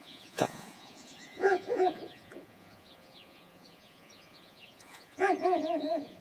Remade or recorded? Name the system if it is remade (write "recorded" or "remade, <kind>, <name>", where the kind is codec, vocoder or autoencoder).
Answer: remade, vocoder, Vocos